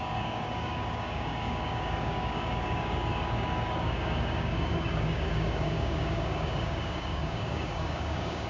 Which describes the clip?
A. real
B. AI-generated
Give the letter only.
B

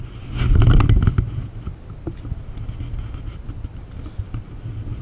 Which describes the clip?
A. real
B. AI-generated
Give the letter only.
A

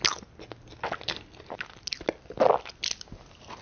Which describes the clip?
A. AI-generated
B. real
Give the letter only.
B